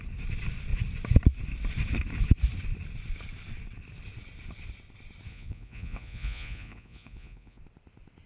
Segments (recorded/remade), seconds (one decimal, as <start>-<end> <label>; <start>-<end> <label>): 0.0-5.3 recorded; 5.3-7.6 remade; 7.6-8.3 recorded

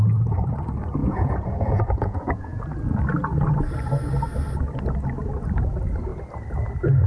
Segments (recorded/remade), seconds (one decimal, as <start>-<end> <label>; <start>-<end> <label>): 0.0-1.0 recorded; 1.0-2.6 remade; 2.6-7.1 recorded